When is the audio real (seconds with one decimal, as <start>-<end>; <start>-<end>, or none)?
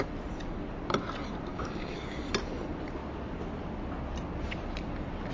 0.0-1.5; 2.3-5.3